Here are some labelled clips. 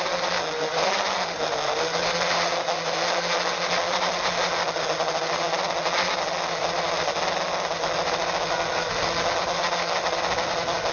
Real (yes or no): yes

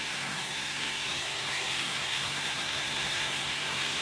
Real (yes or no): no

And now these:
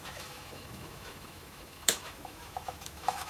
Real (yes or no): no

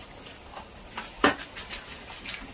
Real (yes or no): yes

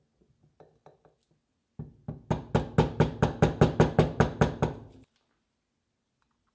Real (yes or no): yes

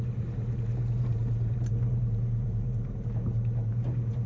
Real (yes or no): no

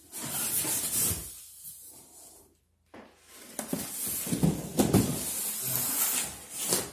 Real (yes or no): yes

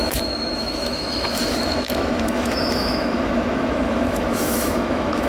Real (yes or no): no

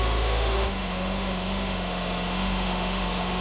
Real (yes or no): no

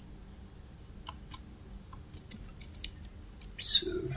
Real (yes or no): yes